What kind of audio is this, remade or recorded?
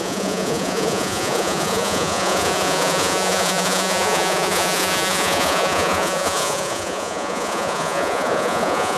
remade